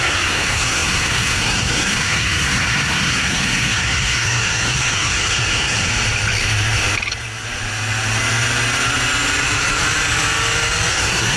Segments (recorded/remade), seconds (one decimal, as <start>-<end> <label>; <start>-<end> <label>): 0.0-5.9 remade; 5.9-10.9 recorded; 10.9-11.4 remade